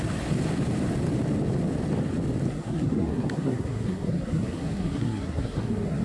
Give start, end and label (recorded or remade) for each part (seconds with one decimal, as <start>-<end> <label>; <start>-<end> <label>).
0.0-2.5 recorded; 2.5-6.0 remade